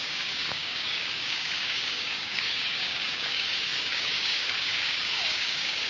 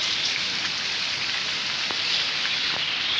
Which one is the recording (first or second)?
second